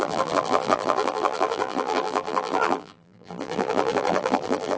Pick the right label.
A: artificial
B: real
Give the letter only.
A